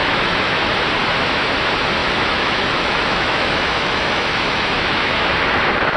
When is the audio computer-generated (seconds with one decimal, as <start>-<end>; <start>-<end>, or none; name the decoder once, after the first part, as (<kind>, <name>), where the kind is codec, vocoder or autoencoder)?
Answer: 0.0-0.7 (autoencoder, DAC-VAE); 2.0-5.6